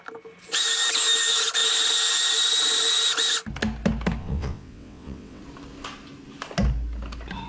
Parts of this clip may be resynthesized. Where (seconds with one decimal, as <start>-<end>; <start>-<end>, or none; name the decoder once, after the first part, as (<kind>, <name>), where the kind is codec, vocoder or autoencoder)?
4.2-5.4 (vocoder, WaveNeXt)